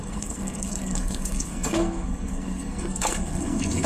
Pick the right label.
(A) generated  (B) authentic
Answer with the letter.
A